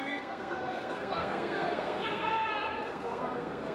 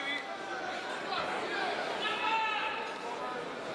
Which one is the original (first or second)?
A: second